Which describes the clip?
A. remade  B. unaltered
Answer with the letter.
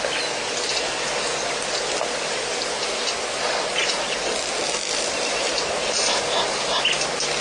B